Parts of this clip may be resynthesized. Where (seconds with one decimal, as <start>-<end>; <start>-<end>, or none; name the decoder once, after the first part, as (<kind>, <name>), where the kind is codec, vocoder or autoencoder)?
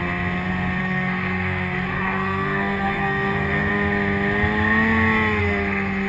0.8-3.7 (codec, SNAC); 5.4-6.1